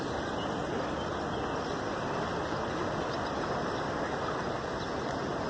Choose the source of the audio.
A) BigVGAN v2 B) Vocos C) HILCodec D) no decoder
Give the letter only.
D